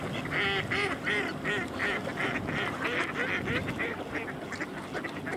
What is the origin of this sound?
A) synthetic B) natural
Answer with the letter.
B